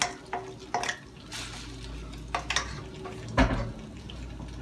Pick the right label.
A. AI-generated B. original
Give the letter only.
B